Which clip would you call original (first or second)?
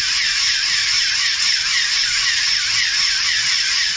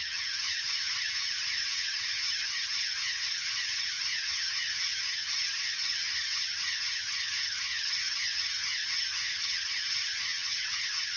first